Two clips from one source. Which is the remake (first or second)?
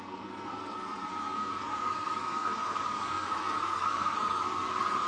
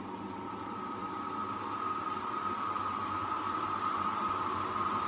first